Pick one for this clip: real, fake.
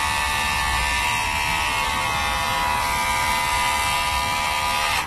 real